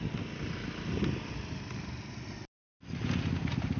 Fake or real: real